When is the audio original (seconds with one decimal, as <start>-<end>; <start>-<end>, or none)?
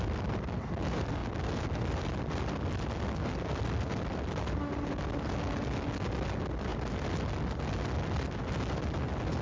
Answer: 0.0-9.4